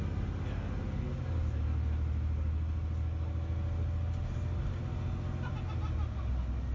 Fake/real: real